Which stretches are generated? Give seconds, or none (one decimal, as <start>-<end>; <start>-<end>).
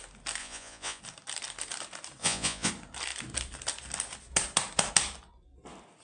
0.4-1.0; 2.2-2.7